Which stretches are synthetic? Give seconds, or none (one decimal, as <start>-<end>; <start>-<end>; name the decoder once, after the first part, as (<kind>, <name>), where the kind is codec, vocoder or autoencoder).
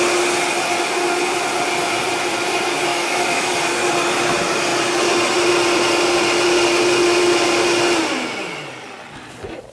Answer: 2.9-3.5 (autoencoder, DAC-VAE)